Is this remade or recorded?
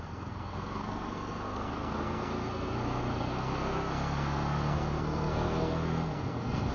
remade